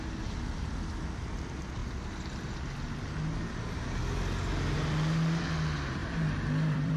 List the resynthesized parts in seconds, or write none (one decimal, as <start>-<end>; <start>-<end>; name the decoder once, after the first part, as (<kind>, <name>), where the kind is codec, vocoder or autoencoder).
6.0-7.0 (vocoder, BigVGAN v2)